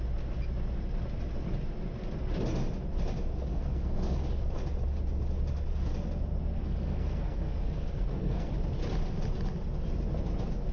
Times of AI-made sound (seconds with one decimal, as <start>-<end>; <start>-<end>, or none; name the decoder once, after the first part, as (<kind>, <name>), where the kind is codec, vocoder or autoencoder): 3.5-4.2 (codec, SNAC); 6.6-8.5